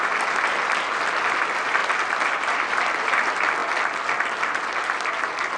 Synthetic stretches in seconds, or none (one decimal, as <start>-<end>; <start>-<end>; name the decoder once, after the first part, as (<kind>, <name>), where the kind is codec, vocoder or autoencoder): none